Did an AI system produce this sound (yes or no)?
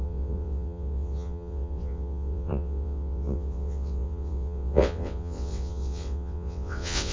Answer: yes